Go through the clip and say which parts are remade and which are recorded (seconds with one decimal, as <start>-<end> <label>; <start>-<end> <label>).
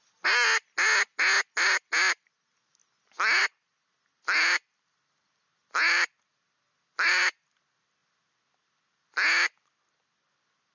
0.0-10.7 recorded